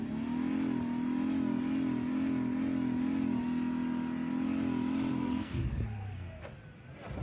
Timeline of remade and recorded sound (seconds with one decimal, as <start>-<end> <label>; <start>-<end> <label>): 0.0-5.1 recorded; 5.1-6.5 remade; 6.5-7.2 recorded